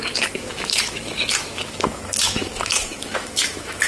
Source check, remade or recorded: remade